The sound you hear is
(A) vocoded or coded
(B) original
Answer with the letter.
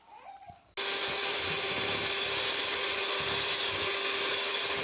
B